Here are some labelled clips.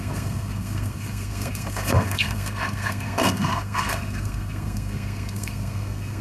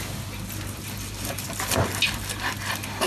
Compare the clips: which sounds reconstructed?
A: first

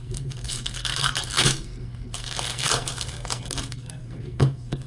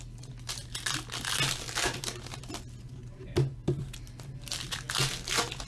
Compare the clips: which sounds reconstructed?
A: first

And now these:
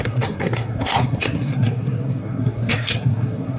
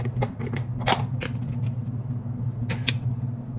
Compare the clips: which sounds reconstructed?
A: first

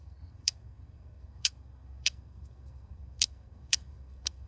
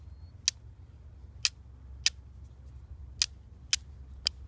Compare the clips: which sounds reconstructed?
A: first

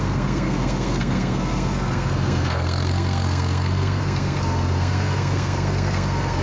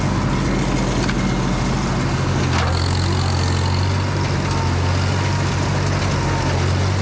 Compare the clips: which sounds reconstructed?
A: first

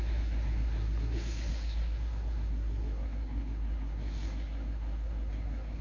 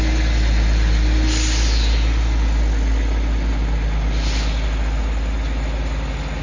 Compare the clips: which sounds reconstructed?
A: first